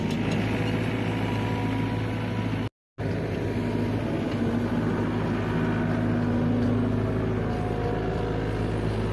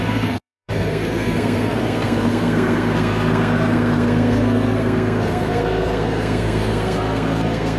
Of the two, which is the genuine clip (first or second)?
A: first